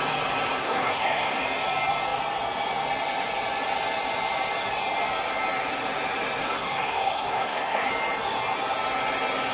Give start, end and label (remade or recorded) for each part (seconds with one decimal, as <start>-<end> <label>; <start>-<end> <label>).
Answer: 0.0-0.6 recorded; 0.6-1.4 remade; 1.4-6.4 recorded; 6.4-7.9 remade; 7.9-9.5 recorded